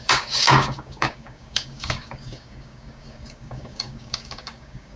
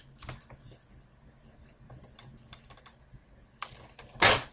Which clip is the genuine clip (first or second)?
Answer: second